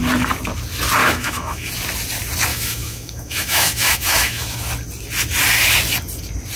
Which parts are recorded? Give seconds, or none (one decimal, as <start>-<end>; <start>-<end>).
0.0-1.0; 1.7-2.5; 4.7-6.6